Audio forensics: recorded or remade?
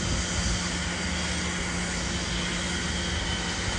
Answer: recorded